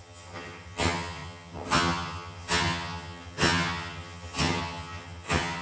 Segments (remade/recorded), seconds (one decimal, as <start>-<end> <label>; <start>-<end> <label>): 0.0-5.6 remade